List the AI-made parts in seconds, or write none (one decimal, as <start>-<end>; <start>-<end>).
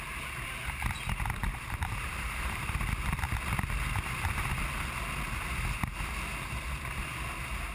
1.4-2.8